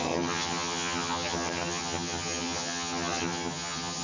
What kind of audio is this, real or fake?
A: fake